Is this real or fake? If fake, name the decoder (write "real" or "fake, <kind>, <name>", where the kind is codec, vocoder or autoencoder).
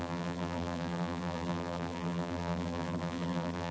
fake, vocoder, BigVGAN v2